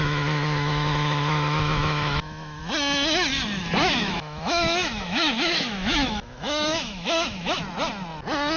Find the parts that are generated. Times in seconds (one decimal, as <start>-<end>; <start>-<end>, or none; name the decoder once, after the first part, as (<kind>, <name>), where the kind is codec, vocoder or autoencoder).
0.0-2.6 (autoencoder, DAC-VAE); 4.0-7.6